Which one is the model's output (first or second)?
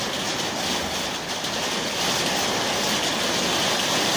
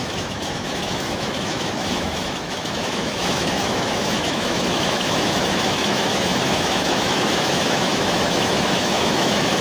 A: second